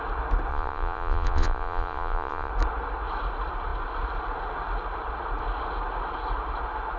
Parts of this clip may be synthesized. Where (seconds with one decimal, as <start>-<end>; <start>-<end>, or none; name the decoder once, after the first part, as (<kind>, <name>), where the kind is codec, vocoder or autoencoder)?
0.5-2.5 (vocoder, Vocos)